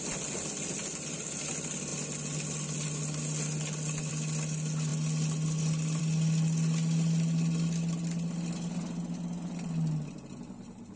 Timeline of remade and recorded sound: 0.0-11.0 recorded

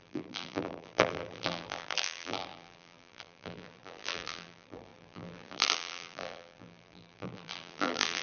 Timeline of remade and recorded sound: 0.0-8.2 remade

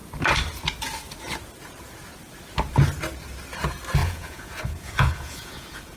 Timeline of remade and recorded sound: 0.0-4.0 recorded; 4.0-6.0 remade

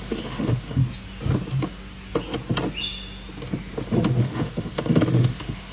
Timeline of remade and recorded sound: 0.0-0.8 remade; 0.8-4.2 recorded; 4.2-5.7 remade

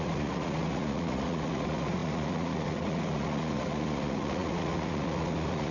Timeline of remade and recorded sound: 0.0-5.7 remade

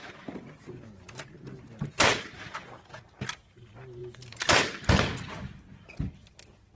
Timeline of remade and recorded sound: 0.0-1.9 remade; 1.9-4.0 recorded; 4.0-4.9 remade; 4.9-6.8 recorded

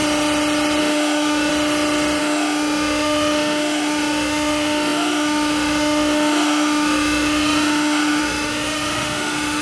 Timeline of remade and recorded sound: 0.0-0.8 recorded; 0.8-1.5 remade; 1.5-2.2 recorded; 2.2-9.6 remade

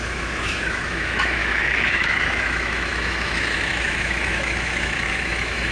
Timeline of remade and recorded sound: 0.0-5.7 remade